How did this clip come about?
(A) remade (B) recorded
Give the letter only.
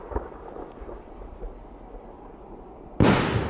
B